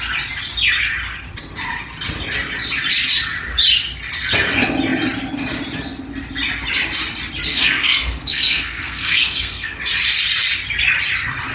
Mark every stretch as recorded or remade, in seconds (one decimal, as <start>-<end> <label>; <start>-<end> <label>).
0.0-7.5 recorded; 7.5-9.8 remade; 9.8-11.5 recorded